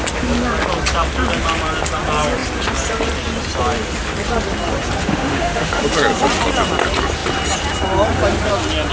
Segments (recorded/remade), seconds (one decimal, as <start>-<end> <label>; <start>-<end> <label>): 0.0-5.0 recorded; 5.0-5.8 remade; 5.8-8.9 recorded